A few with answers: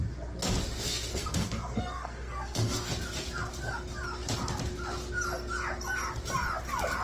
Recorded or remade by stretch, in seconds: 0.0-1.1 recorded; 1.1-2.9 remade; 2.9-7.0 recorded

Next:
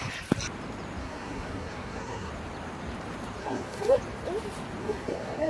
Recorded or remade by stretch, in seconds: 0.0-1.0 recorded; 1.0-2.3 remade; 2.3-3.4 recorded; 3.4-4.0 remade; 4.0-4.8 recorded; 4.8-5.5 remade

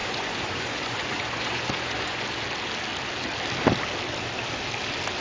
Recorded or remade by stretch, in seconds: 0.0-2.3 remade; 2.3-5.2 recorded

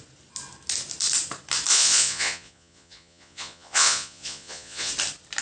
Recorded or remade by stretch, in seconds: 0.0-1.7 recorded; 1.7-4.9 remade; 4.9-5.4 recorded

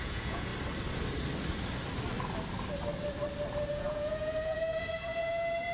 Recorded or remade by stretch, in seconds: 0.0-0.5 remade; 0.5-3.7 recorded; 3.7-5.7 remade

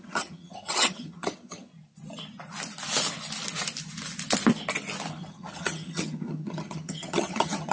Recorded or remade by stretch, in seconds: 0.0-1.7 remade; 1.7-5.1 recorded; 5.1-7.7 remade